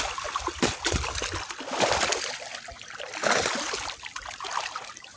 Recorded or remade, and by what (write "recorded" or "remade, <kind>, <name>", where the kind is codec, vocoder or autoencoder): recorded